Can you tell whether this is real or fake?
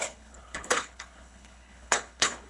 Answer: fake